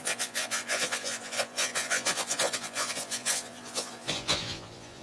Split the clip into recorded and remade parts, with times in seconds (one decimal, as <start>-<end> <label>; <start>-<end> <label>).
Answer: 0.0-5.0 remade